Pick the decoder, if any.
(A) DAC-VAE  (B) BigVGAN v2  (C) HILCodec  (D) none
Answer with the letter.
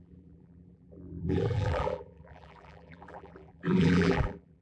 B